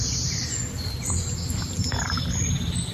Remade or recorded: recorded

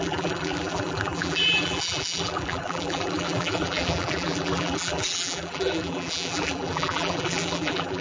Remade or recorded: remade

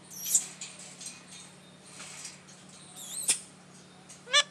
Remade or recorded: recorded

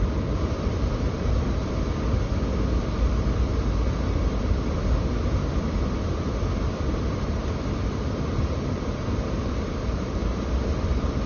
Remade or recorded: remade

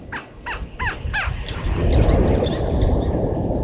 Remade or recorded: recorded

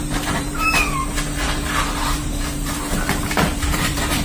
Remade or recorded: remade